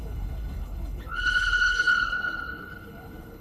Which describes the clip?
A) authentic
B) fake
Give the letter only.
B